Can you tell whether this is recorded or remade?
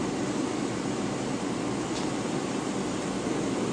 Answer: recorded